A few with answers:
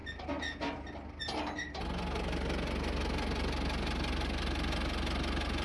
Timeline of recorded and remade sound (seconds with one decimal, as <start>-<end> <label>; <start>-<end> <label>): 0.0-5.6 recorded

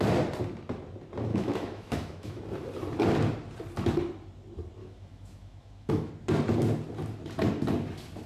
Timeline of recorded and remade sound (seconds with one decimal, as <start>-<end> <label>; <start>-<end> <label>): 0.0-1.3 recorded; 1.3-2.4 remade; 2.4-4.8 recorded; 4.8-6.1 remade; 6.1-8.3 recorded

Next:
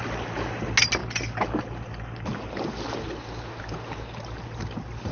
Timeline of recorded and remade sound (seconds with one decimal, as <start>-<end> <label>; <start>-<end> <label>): 0.0-5.1 recorded

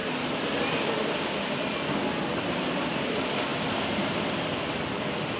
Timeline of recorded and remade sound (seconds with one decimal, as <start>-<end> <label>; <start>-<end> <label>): 0.0-5.4 recorded

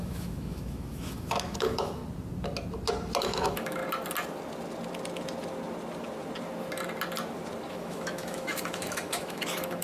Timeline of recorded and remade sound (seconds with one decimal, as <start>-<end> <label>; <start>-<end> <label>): 0.0-2.0 remade; 2.0-3.2 recorded; 3.2-3.8 remade; 3.8-7.7 recorded; 7.7-9.8 remade

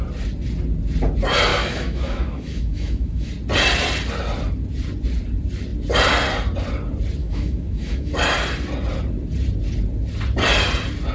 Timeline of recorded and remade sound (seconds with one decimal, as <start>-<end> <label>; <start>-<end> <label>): 0.0-1.5 recorded; 1.5-3.3 remade; 3.3-7.2 recorded; 7.2-8.1 remade; 8.1-11.1 recorded